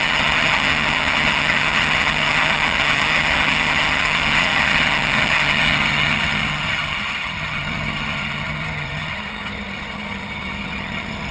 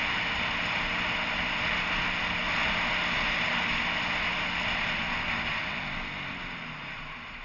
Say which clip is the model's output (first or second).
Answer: first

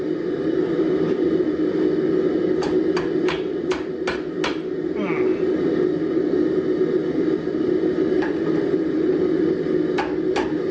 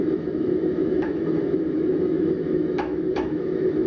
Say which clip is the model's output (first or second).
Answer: second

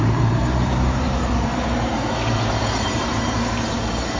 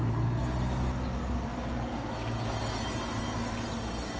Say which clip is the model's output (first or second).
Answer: first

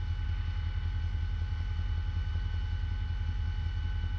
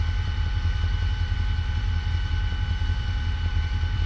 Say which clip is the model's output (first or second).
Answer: second